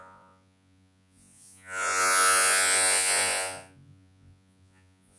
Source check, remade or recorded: remade